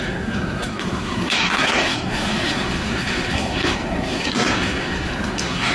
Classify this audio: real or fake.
fake